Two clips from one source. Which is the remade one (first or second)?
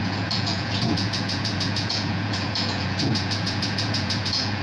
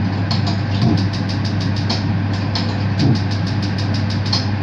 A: first